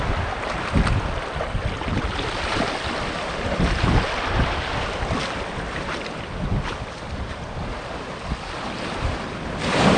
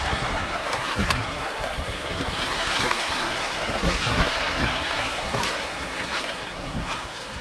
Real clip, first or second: first